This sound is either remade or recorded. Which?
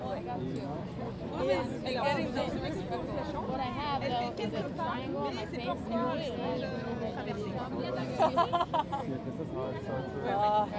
recorded